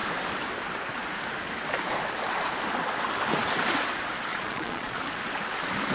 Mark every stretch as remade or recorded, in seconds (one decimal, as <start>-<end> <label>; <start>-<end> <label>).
0.0-4.3 recorded; 4.3-5.0 remade; 5.0-5.9 recorded